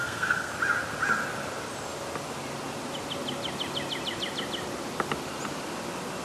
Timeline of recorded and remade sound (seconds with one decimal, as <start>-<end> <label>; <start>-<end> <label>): 0.0-0.5 remade; 0.5-6.2 recorded